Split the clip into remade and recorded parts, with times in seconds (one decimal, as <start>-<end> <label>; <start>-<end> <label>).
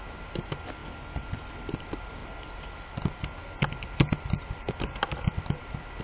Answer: 0.0-6.0 recorded